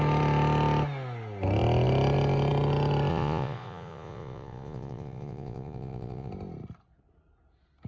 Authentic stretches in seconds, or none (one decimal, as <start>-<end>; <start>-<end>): 0.0-3.1; 6.3-7.9